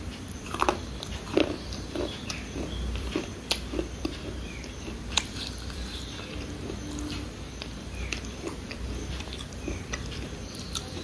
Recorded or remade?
remade